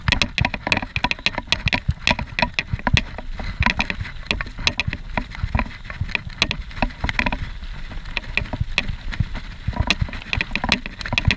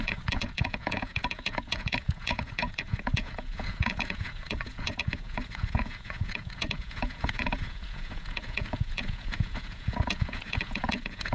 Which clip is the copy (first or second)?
second